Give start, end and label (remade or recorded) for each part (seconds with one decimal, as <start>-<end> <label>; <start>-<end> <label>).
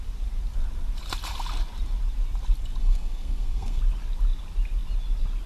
0.0-2.8 recorded; 2.8-3.8 remade; 3.8-5.5 recorded